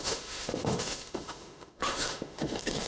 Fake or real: fake